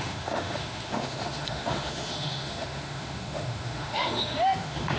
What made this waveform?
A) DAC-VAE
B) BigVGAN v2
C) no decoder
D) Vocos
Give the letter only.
A